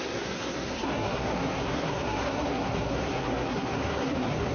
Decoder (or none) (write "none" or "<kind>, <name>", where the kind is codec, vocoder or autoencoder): codec, SNAC